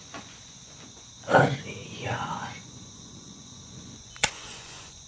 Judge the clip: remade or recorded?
remade